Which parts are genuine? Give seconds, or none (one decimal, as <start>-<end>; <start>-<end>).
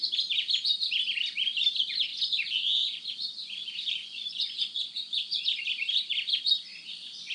0.0-2.1; 5.6-7.3